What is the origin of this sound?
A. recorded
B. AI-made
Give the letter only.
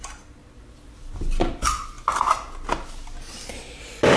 A